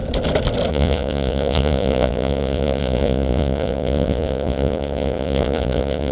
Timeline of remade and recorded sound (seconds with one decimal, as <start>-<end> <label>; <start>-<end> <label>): 0.0-0.7 recorded; 0.7-6.1 remade

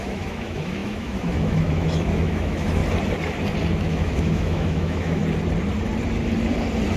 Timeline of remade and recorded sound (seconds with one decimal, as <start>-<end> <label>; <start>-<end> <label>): 0.0-2.8 remade; 2.8-3.7 recorded; 3.7-5.2 remade; 5.2-7.0 recorded

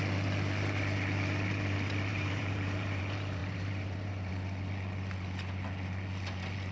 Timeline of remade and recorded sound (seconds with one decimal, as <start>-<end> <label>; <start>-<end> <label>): 0.0-2.1 recorded; 2.1-3.0 remade; 3.0-3.4 recorded; 3.4-4.3 remade; 4.3-6.7 recorded

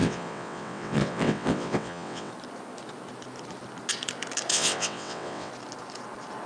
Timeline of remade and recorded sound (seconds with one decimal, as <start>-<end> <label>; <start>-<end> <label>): 0.0-2.3 remade; 2.3-4.5 recorded; 4.5-5.5 remade; 5.5-6.5 recorded

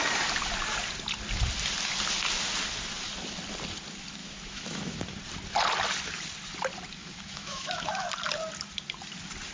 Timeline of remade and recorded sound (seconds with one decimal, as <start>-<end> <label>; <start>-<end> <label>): 0.0-4.2 recorded; 4.2-5.0 remade; 5.0-7.0 recorded; 7.0-8.1 remade; 8.1-9.5 recorded